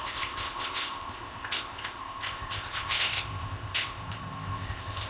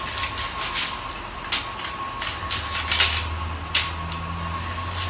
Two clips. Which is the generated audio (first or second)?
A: first